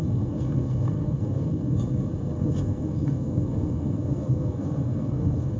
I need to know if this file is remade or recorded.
remade